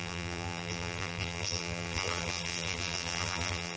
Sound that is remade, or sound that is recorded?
remade